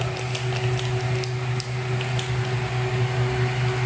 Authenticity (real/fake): real